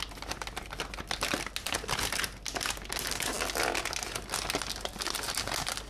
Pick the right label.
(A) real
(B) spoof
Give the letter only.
A